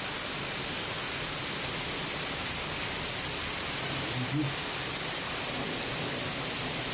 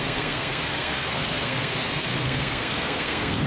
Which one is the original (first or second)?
first